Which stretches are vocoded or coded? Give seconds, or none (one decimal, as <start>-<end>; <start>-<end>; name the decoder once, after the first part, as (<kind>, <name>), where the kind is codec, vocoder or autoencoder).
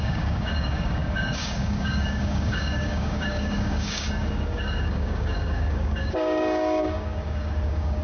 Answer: 0.0-8.0 (codec, DAC)